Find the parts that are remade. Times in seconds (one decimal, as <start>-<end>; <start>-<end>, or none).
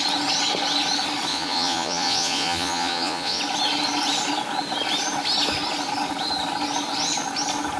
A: 1.3-3.4